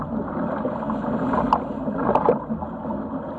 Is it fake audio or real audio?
real